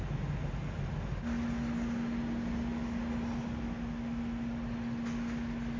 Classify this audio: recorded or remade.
recorded